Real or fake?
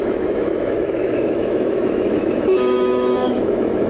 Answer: fake